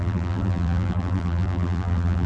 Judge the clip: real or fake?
fake